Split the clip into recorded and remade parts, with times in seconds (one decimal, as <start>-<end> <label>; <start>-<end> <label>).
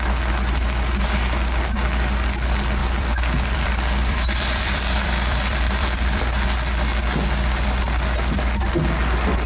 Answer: 0.0-2.8 recorded; 2.8-6.2 remade; 6.2-9.5 recorded